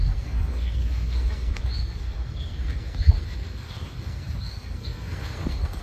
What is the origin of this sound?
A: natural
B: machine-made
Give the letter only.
B